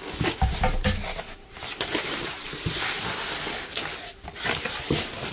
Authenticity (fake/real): real